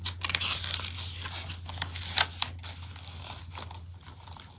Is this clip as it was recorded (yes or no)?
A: yes